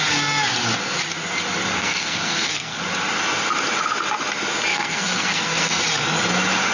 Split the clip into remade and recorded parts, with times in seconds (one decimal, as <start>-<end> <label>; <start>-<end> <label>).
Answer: 0.0-1.7 recorded; 1.7-2.8 remade; 2.8-4.7 recorded; 4.7-5.8 remade; 5.8-6.7 recorded